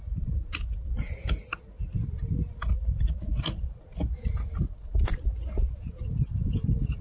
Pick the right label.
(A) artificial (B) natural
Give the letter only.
B